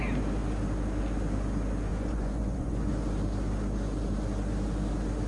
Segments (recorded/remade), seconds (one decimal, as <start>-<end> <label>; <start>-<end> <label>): 0.0-1.9 recorded; 1.9-2.9 remade; 2.9-5.3 recorded

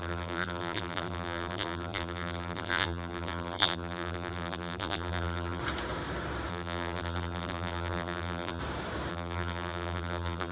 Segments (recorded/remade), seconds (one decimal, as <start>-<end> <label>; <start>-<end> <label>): 0.0-5.6 remade; 5.6-6.5 recorded; 6.5-8.6 remade; 8.6-9.1 recorded; 9.1-10.5 remade